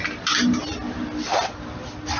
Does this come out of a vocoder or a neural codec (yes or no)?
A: no